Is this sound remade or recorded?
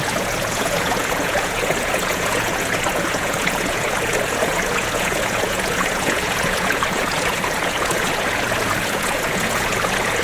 remade